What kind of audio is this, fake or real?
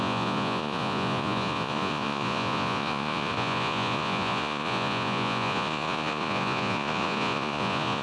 fake